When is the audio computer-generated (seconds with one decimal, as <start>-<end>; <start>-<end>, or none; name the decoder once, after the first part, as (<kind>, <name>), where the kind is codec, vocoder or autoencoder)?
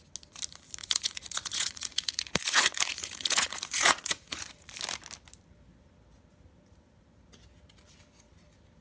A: 0.8-4.7 (vocoder, Vocos)